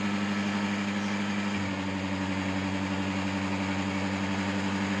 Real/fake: real